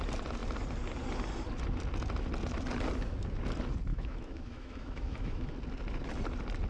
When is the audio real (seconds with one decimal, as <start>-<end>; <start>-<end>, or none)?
0.0-3.9; 5.5-6.7